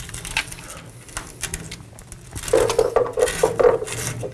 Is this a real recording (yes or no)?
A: yes